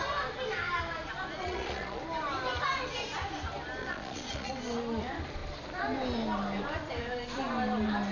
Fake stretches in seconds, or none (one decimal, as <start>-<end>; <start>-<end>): 1.4-2.0; 3.8-4.5